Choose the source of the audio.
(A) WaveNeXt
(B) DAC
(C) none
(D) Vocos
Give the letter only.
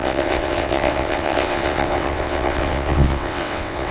A